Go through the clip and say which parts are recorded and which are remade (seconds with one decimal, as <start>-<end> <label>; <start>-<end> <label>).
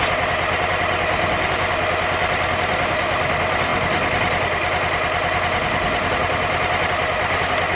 0.0-7.8 recorded